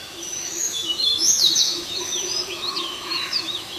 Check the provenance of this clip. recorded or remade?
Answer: remade